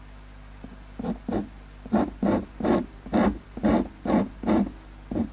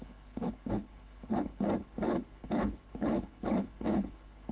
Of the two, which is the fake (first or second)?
second